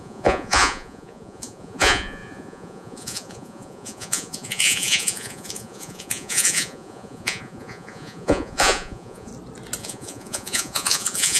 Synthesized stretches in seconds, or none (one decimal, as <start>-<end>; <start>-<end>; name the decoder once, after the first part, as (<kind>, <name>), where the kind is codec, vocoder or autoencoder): 0.0-9.3 (vocoder, Vocos); 9.8-11.4

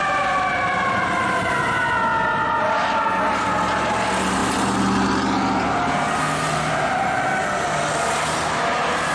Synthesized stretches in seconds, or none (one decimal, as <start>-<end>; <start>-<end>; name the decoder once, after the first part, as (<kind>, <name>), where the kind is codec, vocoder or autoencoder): none

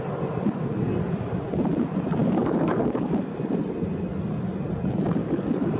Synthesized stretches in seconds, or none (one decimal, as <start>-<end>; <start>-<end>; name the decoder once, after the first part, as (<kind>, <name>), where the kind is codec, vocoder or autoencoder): 2.2-3.1 (codec, DAC); 5.2-5.8

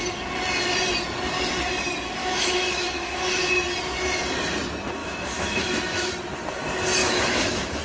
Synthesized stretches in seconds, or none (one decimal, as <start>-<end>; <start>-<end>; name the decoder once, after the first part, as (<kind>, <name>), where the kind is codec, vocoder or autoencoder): 2.2-3.5 (autoencoder, DAC-VAE); 5.0-6.1; 7.0-7.8

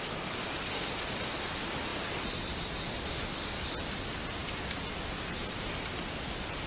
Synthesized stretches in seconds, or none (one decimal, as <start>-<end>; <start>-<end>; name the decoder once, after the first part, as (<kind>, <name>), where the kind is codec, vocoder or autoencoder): 0.0-4.4 (vocoder, BigVGAN v2); 6.1-6.7

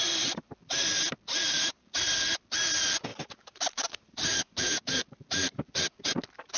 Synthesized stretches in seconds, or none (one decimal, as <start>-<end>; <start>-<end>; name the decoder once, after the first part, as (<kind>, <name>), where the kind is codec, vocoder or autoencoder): 1.7-2.2 (vocoder, BigVGAN v2); 3.1-4.8